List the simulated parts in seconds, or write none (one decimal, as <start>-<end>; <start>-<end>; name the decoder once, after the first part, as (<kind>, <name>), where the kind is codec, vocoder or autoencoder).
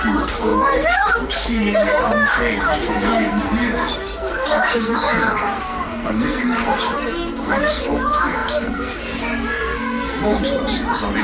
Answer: 0.0-10.4 (codec, SNAC)